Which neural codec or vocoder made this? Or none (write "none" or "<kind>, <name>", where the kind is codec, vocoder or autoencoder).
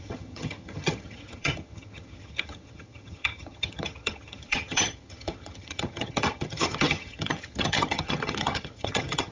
vocoder, HiFi-GAN